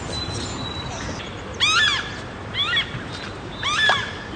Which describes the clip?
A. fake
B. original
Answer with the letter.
B